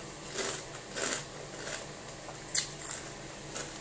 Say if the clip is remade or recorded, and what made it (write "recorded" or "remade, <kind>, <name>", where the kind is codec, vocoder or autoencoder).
recorded